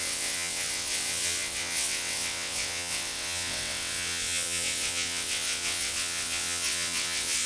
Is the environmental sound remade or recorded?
remade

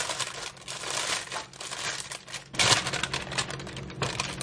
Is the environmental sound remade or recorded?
recorded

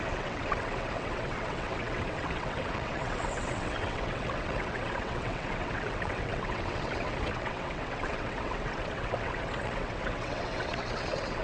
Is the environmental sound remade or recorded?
remade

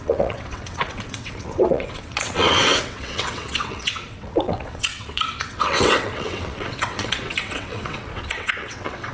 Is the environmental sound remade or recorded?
remade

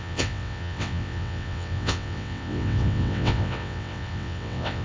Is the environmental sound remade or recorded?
remade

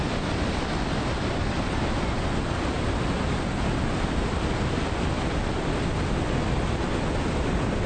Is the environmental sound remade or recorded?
recorded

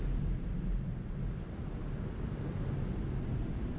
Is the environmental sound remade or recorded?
recorded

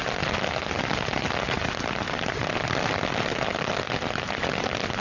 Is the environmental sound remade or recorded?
recorded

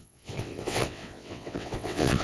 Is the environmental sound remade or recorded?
remade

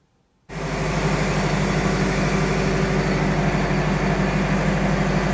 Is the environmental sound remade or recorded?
recorded